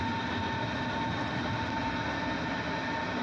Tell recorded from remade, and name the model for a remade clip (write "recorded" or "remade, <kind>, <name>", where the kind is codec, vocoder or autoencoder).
recorded